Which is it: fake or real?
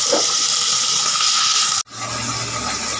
real